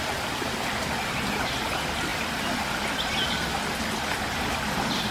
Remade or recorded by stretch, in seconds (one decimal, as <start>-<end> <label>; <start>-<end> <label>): 0.0-5.1 recorded